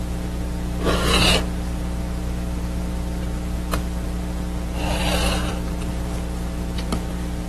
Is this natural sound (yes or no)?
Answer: yes